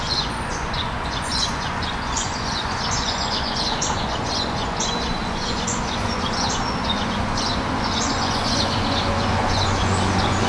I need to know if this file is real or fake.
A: fake